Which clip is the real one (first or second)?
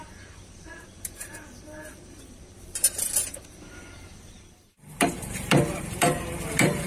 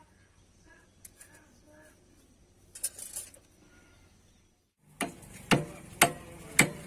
second